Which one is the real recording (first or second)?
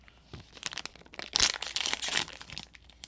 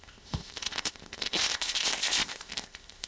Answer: first